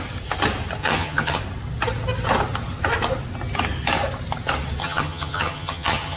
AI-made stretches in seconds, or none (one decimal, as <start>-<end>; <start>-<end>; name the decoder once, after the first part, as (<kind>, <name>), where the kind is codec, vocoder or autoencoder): 0.8-1.4 (vocoder, HiFi-GAN); 4.8-6.2